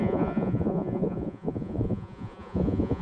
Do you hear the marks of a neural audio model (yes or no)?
yes